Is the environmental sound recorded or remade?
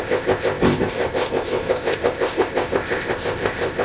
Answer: remade